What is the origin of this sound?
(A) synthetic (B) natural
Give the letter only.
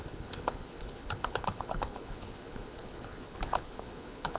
A